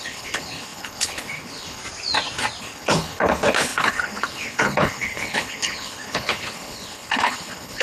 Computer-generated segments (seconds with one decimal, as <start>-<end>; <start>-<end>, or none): 0.0-1.8; 2.6-7.8